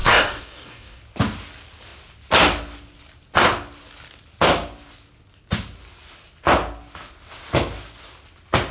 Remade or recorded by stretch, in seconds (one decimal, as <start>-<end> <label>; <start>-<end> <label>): 0.0-1.0 remade; 1.0-8.7 recorded